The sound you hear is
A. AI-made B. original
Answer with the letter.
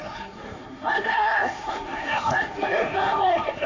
A